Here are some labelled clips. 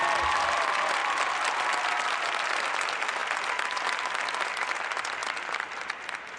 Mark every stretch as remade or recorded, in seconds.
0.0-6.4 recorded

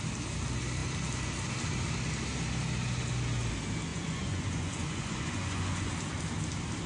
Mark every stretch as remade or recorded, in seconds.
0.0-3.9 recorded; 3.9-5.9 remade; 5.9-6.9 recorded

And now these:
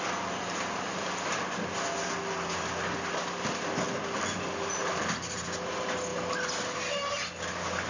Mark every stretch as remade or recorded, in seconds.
0.0-7.9 recorded